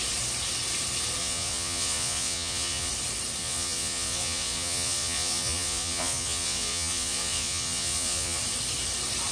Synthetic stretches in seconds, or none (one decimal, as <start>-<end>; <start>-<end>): 1.2-2.9; 3.4-8.4